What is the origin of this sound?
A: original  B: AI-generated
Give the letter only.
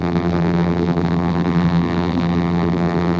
B